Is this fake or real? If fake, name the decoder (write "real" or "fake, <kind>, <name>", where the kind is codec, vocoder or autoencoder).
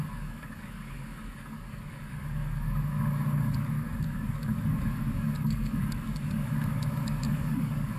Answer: fake, codec, DAC